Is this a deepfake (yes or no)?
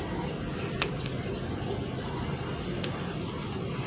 no